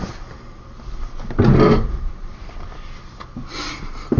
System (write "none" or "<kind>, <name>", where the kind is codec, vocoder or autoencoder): none